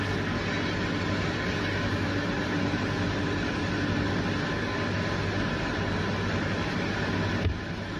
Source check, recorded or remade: recorded